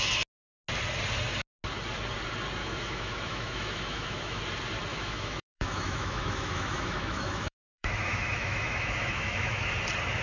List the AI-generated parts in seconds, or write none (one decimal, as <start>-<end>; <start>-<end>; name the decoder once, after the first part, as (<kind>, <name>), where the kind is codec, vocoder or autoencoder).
2.6-4.4 (autoencoder, DAC-VAE); 4.9-9.6